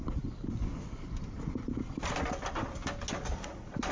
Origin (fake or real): real